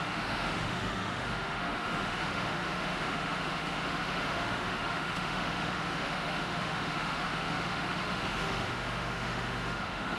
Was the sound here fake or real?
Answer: fake